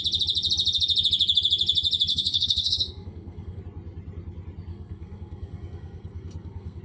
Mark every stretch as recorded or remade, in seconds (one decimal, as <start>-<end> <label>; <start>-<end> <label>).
0.0-2.1 recorded; 2.1-3.6 remade; 3.6-4.7 recorded; 4.7-6.8 remade